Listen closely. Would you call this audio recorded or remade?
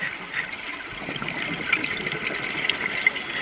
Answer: recorded